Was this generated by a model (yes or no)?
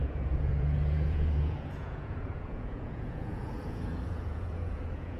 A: yes